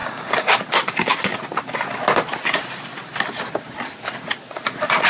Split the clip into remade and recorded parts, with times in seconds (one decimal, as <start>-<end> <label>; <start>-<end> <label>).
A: 0.0-0.6 remade; 0.6-5.1 recorded